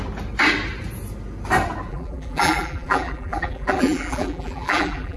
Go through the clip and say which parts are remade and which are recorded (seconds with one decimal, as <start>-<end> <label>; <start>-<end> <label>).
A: 0.0-1.9 recorded; 1.9-5.2 remade